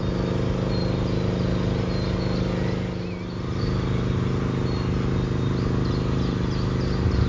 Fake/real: real